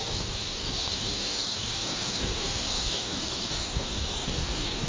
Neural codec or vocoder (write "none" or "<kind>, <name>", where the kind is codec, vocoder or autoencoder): codec, DAC